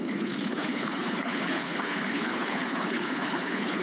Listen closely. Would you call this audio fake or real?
fake